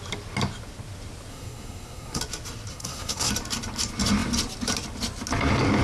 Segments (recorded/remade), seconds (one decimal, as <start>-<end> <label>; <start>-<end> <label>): 0.0-1.3 recorded; 1.3-2.2 remade; 2.2-2.7 recorded; 2.7-3.3 remade; 3.3-5.8 recorded

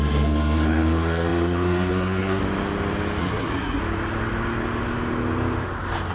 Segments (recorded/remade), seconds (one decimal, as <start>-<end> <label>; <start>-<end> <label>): 0.0-2.4 remade; 2.4-3.2 recorded; 3.2-3.8 remade; 3.8-6.1 recorded

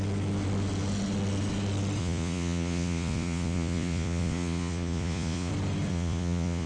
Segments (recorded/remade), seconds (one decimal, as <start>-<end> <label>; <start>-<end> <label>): 0.0-2.0 recorded; 2.0-5.5 remade; 5.5-5.9 recorded; 5.9-6.7 remade

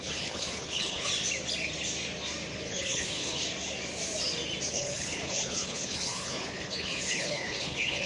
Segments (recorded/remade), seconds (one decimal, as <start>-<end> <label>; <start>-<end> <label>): 0.0-1.1 remade; 1.1-2.7 recorded; 2.7-3.4 remade; 3.4-4.7 recorded; 4.7-8.1 remade

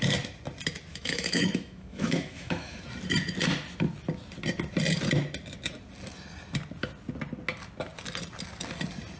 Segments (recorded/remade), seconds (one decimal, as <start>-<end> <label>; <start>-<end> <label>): 0.0-0.9 recorded; 0.9-2.8 remade; 2.8-9.2 recorded

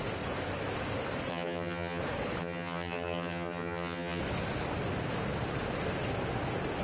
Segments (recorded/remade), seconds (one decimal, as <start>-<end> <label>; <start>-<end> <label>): 0.0-1.3 recorded; 1.3-2.0 remade; 2.0-2.4 recorded; 2.4-4.2 remade; 4.2-6.8 recorded